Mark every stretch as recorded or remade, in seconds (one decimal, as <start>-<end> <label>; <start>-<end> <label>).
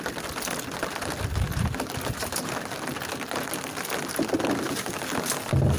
0.0-1.5 recorded; 1.5-2.5 remade; 2.5-5.8 recorded